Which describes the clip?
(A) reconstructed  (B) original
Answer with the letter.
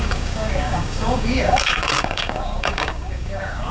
A